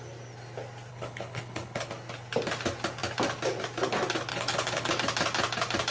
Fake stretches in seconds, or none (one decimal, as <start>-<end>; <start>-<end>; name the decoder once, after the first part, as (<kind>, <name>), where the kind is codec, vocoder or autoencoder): 0.9-1.9 (codec, HILCodec); 4.3-4.9